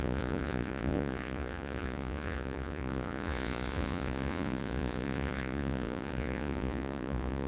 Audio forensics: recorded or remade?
remade